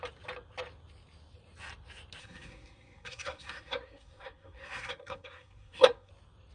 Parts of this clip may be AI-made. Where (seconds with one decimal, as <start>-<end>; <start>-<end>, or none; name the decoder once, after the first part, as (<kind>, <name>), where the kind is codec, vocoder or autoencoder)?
2.2-6.1 (codec, SNAC)